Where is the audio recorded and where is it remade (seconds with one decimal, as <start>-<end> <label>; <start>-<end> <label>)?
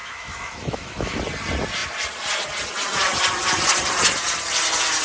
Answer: 0.0-1.2 remade; 1.2-5.0 recorded